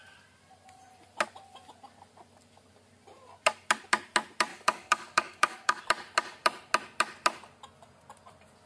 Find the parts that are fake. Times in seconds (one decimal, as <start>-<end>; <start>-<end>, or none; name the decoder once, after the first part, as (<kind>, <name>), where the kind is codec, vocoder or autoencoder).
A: 4.5-5.8 (codec, DAC)